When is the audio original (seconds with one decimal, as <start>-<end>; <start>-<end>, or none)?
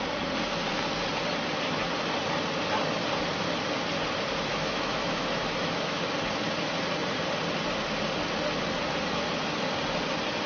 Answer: 0.0-4.5; 6.0-10.5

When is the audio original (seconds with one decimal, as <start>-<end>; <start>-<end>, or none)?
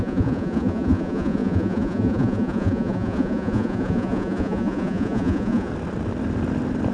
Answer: 5.7-6.9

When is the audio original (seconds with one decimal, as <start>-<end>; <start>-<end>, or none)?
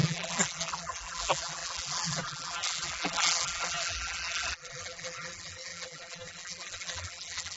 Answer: none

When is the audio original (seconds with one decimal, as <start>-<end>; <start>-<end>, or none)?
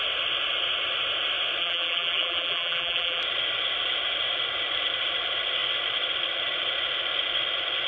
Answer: 0.0-1.6; 3.2-7.9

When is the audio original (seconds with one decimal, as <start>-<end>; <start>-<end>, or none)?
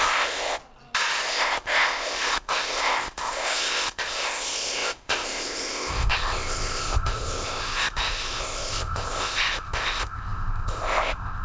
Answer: 0.6-1.3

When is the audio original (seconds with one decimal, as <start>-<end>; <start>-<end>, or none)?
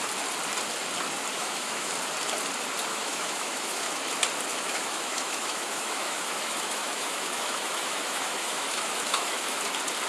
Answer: 0.0-1.3; 1.9-2.9; 4.0-4.5; 9.6-10.1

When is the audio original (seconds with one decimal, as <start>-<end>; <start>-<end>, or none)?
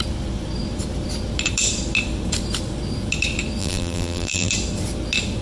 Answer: 0.0-3.6; 4.5-5.4